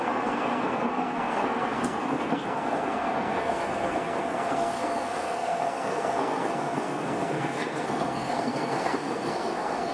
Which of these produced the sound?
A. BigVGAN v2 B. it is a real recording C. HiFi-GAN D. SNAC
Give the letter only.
D